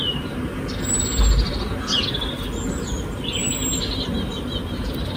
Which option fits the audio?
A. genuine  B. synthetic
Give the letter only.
A